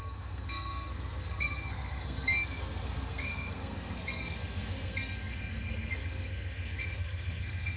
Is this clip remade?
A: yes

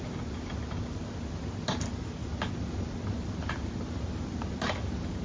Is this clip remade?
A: no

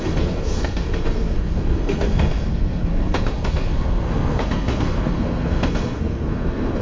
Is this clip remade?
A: yes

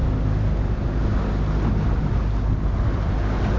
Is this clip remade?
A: no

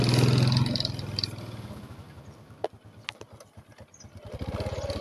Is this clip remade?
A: no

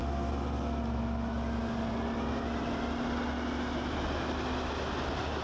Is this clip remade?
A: no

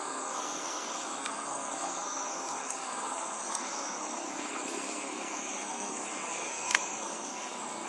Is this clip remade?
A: yes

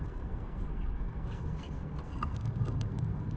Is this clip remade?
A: yes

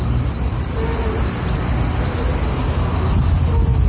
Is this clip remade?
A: no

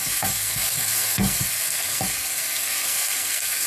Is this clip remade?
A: yes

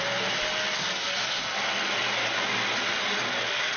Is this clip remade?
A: no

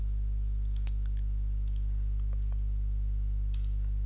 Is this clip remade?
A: no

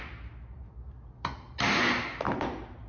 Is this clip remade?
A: no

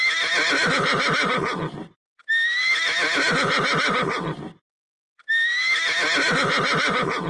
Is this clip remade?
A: no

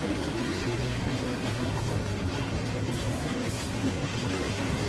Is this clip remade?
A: yes